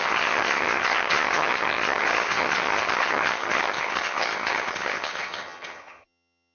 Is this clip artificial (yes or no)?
yes